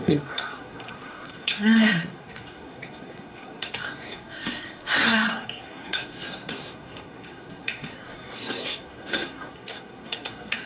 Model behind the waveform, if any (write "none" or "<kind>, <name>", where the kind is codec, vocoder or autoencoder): codec, SNAC